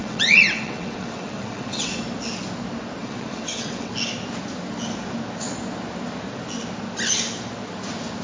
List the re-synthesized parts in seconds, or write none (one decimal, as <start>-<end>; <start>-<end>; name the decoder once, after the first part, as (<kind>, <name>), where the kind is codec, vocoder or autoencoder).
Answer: 0.0-2.0 (vocoder, WaveNeXt); 3.0-3.9